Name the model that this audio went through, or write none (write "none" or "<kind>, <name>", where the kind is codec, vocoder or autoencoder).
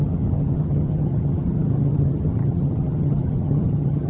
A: vocoder, HiFi-GAN